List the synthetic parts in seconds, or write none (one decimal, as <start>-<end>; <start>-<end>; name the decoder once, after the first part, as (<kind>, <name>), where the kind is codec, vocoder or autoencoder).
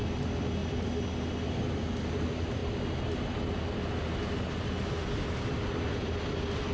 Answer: none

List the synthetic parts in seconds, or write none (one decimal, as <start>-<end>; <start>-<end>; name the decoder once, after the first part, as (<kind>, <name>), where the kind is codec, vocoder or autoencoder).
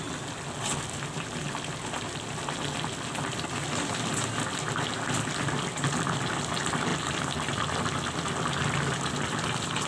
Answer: none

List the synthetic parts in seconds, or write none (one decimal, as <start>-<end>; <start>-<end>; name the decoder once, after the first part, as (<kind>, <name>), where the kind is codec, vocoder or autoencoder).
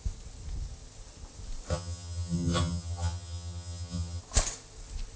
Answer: 1.7-4.2 (vocoder, HiFi-GAN)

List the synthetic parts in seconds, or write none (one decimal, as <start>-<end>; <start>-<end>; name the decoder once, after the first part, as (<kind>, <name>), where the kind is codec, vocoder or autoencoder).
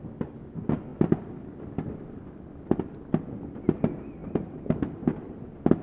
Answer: 0.9-3.2 (vocoder, BigVGAN v2)